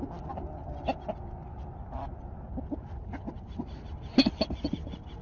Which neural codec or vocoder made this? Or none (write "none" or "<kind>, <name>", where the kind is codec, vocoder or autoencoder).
none